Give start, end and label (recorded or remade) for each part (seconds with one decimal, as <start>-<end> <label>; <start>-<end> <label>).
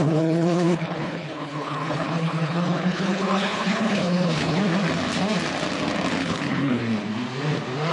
0.0-4.6 remade; 4.6-6.2 recorded; 6.2-6.8 remade; 6.8-7.9 recorded